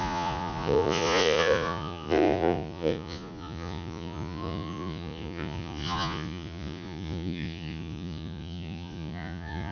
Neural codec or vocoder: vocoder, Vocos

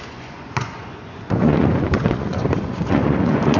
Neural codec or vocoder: vocoder, Vocos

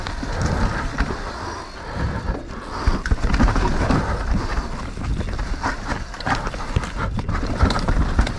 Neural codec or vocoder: none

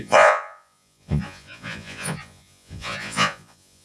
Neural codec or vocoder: vocoder, Vocos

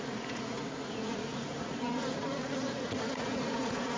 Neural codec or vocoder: vocoder, Vocos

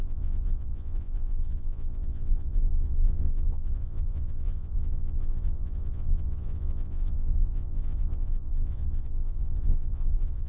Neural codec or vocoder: vocoder, Vocos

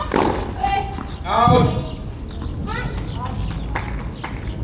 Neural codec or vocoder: none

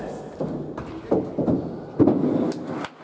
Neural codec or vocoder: none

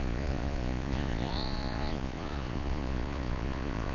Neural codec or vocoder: vocoder, Vocos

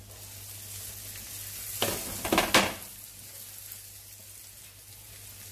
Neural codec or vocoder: none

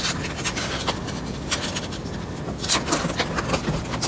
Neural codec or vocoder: none